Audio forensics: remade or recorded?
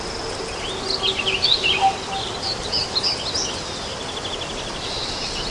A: recorded